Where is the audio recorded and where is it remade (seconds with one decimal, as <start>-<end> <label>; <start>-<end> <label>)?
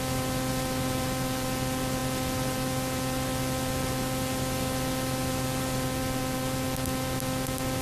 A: 0.0-7.8 recorded